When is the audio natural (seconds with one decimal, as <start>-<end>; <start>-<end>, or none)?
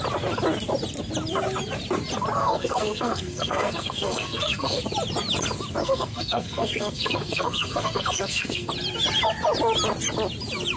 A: 0.0-2.4; 4.8-5.8; 8.7-10.8